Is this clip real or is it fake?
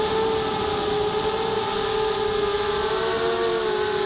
real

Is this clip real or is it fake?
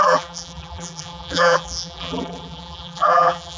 fake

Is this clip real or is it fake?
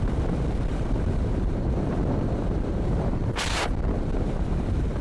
fake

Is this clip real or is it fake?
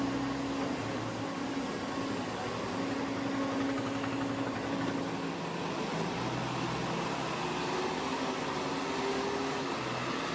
real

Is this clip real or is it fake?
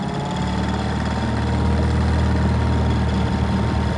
real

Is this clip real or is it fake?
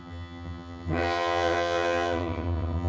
fake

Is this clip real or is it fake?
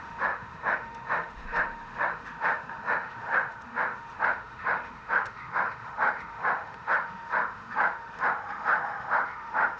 fake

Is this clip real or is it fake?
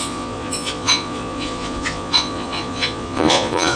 fake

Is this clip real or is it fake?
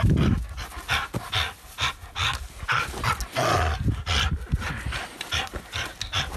real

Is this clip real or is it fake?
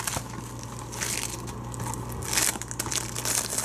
real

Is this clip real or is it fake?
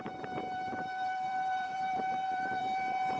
fake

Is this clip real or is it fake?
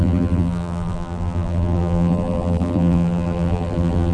fake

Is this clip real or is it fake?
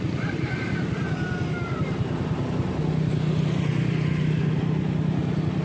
real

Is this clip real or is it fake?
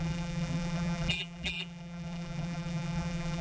fake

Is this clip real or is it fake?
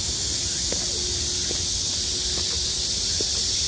real